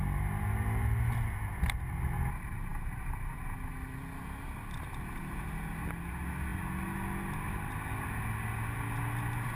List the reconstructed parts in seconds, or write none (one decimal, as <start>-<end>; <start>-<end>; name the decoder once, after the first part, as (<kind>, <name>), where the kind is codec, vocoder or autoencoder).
none